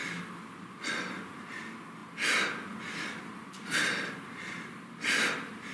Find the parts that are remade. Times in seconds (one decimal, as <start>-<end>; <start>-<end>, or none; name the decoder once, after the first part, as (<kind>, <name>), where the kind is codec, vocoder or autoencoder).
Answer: none